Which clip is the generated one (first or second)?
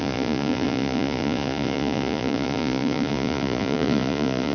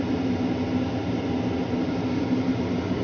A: first